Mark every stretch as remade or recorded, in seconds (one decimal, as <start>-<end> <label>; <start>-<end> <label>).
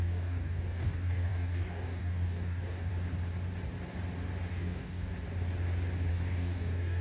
0.0-2.9 remade; 2.9-4.5 recorded; 4.5-5.1 remade; 5.1-6.1 recorded; 6.1-7.0 remade